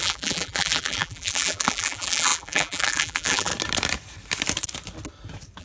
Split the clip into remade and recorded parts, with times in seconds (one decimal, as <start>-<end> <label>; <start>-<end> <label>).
0.0-3.5 remade; 3.5-5.6 recorded